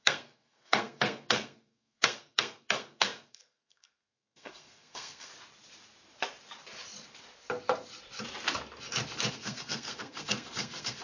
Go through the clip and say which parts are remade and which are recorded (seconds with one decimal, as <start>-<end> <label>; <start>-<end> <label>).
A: 0.0-5.3 remade; 5.3-9.3 recorded; 9.3-11.0 remade